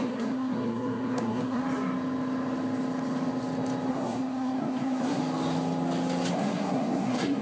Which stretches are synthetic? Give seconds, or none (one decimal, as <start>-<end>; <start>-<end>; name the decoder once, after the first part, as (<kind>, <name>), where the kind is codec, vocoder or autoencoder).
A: 0.0-1.6 (codec, SNAC); 3.9-5.2; 6.3-7.4